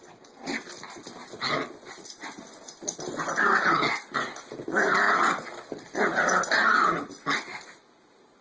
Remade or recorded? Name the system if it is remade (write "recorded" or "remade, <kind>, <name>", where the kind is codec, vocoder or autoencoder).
recorded